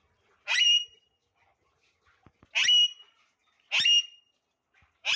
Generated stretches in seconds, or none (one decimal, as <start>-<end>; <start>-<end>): 0.0-1.2; 3.0-3.4; 4.5-5.2